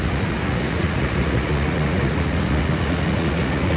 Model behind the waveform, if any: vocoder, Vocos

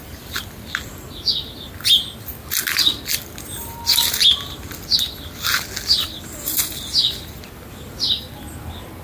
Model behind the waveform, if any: none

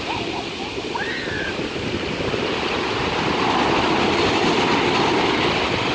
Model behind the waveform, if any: none